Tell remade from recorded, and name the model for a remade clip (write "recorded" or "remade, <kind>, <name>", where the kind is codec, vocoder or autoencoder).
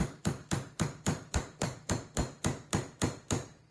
remade, vocoder, BigVGAN v2